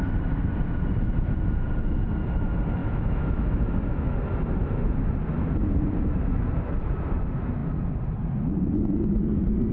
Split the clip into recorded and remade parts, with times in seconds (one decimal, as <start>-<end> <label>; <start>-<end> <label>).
0.0-2.8 recorded; 2.8-4.1 remade; 4.1-9.7 recorded